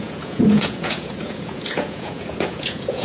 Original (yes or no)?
no